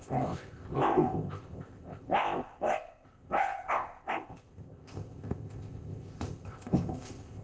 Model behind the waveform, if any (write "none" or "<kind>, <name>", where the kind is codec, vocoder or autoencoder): codec, ZipCodec